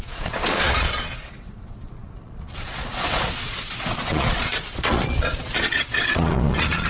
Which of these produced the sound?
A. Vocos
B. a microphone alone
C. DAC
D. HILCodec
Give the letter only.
A